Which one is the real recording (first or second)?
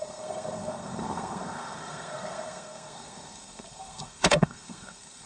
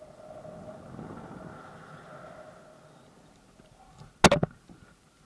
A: second